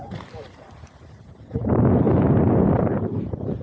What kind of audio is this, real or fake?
real